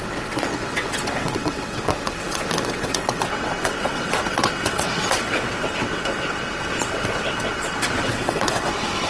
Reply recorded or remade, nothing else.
remade